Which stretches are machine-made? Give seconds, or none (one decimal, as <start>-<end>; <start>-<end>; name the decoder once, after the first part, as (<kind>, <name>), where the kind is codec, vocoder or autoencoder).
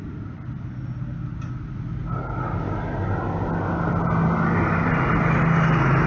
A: none